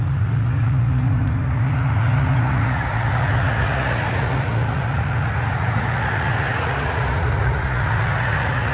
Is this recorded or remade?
remade